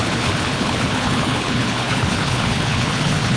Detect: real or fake fake